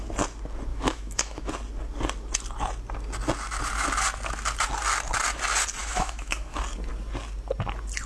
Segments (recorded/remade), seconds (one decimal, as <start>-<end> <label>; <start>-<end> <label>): 0.0-0.7 recorded; 0.7-1.5 remade; 1.5-5.8 recorded; 5.8-6.6 remade; 6.6-8.1 recorded